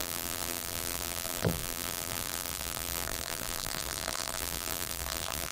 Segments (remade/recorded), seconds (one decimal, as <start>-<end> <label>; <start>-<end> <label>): 0.0-5.5 remade